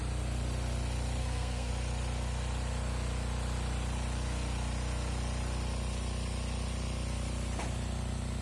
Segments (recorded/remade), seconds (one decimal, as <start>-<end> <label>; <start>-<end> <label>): 0.0-1.2 recorded; 1.2-1.7 remade; 1.7-8.4 recorded